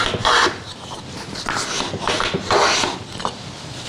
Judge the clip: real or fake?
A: real